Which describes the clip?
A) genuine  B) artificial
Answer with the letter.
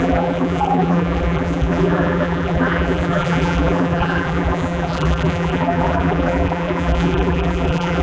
B